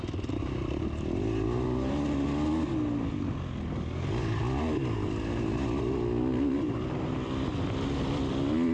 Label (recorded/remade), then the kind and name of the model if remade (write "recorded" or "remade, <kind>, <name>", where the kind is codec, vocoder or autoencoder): recorded